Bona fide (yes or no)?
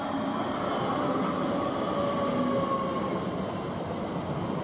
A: yes